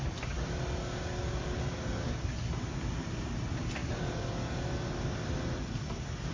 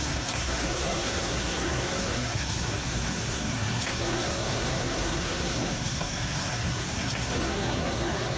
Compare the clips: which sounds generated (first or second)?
second